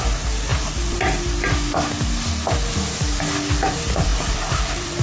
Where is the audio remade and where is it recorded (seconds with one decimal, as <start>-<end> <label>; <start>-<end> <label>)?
0.0-0.5 remade; 0.5-3.5 recorded; 3.5-5.0 remade